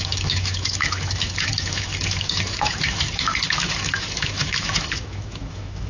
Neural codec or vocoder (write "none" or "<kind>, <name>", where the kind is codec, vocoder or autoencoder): autoencoder, DAC-VAE